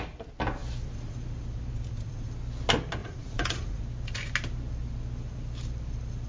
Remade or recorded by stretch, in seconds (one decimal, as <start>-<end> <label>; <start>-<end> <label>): 0.0-3.0 recorded; 3.0-3.8 remade; 3.8-6.3 recorded

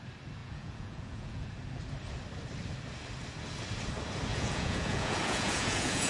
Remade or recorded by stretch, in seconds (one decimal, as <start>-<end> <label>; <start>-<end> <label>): 0.0-0.4 recorded; 0.4-1.5 remade; 1.5-4.3 recorded; 4.3-6.1 remade

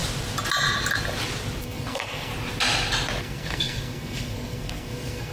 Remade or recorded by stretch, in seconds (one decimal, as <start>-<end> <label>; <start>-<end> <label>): 0.0-1.6 recorded; 1.6-2.3 remade; 2.3-3.2 recorded; 3.2-5.3 remade

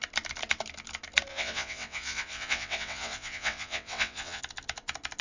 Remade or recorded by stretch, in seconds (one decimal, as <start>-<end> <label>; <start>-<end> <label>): 0.0-1.3 recorded; 1.3-4.4 remade; 4.4-5.2 recorded